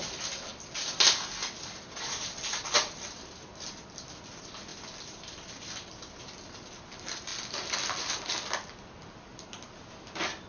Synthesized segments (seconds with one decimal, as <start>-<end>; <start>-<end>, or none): 1.4-4.2; 4.7-6.2